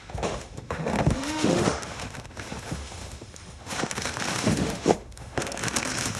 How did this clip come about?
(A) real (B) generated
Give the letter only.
B